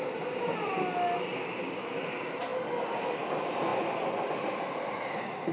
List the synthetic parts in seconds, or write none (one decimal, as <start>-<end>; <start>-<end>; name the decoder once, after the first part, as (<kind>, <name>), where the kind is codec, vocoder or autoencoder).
none